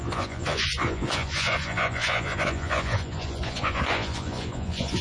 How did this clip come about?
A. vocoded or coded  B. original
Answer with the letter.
A